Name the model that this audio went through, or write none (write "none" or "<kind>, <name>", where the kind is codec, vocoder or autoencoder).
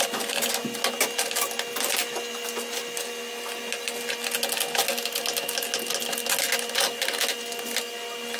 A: none